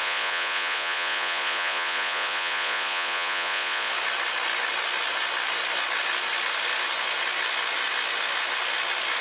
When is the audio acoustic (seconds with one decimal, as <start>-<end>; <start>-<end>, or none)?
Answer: 3.9-9.2